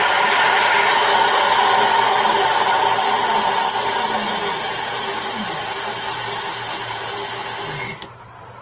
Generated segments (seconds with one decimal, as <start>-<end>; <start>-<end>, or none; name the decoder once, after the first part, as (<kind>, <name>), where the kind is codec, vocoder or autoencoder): none